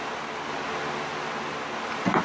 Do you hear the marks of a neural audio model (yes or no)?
no